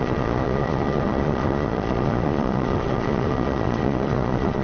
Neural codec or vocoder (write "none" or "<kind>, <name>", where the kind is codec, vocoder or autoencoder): vocoder, Vocos